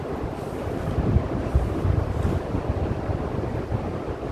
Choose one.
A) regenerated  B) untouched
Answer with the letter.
B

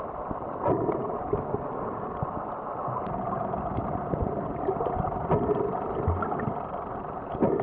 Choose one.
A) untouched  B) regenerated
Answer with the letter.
A